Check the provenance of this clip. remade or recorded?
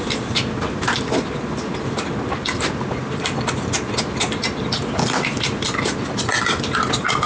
recorded